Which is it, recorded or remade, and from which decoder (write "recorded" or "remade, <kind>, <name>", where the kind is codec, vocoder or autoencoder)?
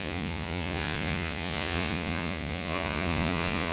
remade, vocoder, Vocos